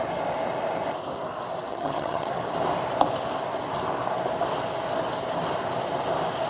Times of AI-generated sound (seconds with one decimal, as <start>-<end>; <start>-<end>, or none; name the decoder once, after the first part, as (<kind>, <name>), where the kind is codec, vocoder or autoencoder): 1.7-2.3 (vocoder, HiFi-GAN)